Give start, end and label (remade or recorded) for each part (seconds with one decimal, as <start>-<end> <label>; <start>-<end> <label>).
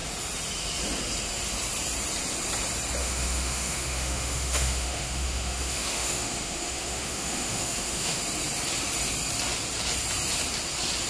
0.0-3.0 recorded; 3.0-8.2 remade; 8.2-11.1 recorded